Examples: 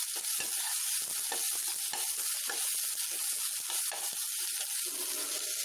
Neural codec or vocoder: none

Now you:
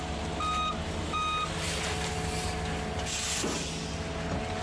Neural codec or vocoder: none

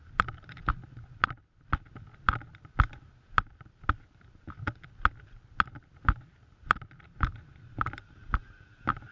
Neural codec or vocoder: none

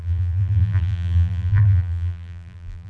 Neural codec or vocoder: vocoder, BigVGAN v2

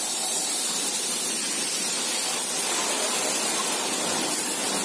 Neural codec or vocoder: vocoder, BigVGAN v2